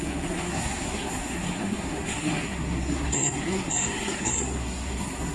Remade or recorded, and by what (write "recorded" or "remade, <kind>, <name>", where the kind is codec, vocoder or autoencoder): remade, codec, SNAC